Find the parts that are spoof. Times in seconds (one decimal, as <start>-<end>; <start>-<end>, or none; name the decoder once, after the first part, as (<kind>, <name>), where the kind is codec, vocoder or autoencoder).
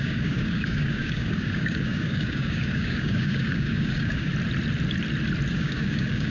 0.0-4.3 (codec, DAC); 5.5-6.3